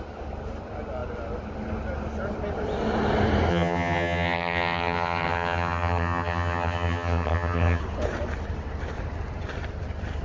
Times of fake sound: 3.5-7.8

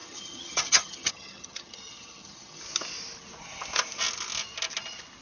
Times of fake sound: 0.0-2.6

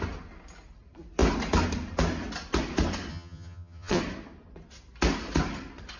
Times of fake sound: 3.1-4.0

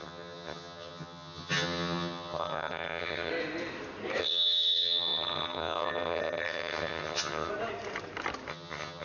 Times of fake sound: 0.0-3.3; 4.2-7.5; 8.5-9.0

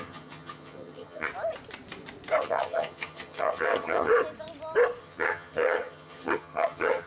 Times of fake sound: 0.0-1.3; 2.4-4.1; 5.0-7.1

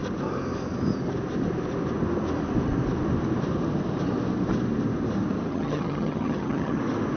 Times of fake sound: 5.5-6.8

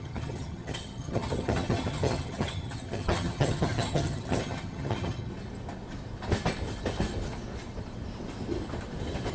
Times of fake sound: 0.0-5.3